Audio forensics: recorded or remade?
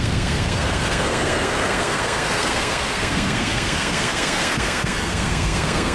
remade